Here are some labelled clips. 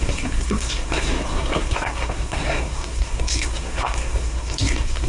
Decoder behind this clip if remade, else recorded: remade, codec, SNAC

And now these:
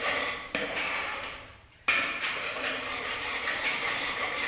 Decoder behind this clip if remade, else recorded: remade, vocoder, BigVGAN v2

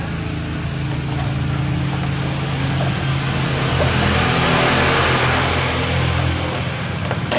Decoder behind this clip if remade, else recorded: recorded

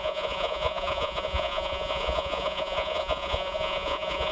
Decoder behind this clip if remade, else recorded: remade, vocoder, Vocos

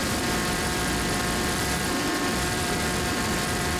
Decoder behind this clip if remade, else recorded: remade, vocoder, BigVGAN v2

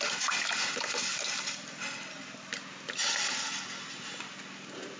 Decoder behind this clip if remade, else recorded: recorded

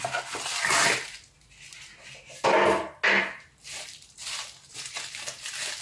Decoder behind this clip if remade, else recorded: recorded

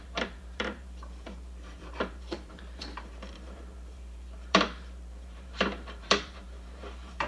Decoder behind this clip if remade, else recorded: remade, vocoder, BigVGAN v2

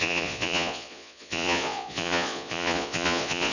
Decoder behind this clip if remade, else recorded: remade, vocoder, Vocos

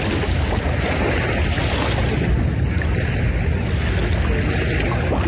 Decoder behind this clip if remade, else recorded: recorded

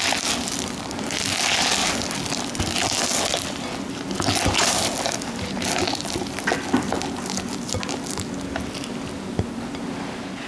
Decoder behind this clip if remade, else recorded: recorded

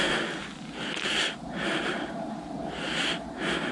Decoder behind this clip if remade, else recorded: recorded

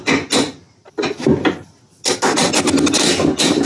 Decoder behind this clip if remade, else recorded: recorded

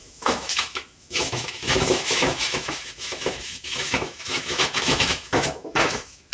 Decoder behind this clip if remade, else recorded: remade, autoencoder, DAC-VAE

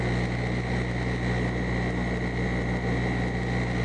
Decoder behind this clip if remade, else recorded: recorded